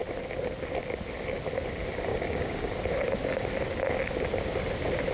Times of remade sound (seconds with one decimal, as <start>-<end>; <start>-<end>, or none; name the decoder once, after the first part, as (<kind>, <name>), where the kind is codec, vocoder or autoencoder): 2.1-2.7 (codec, DAC)